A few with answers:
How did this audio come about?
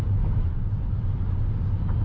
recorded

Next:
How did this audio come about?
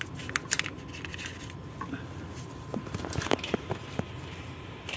recorded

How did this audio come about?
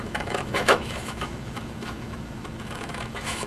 remade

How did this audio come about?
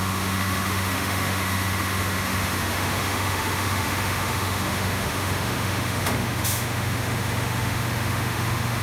remade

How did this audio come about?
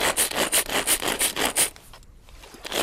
recorded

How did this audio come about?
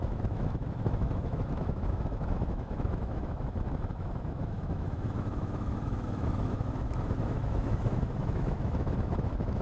remade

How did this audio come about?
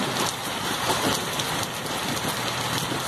recorded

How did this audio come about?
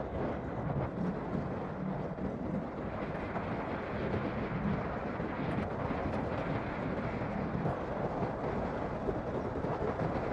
recorded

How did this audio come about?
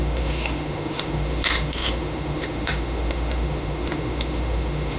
remade